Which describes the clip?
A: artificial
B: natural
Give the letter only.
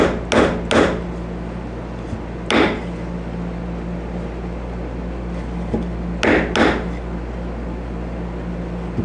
B